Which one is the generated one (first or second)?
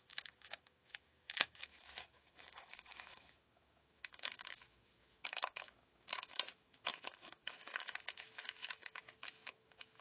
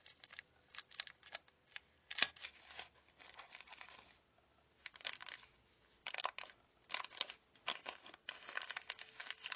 first